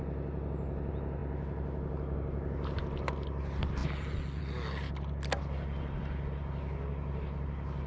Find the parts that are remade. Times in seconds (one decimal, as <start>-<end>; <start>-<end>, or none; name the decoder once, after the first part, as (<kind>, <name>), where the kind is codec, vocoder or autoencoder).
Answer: none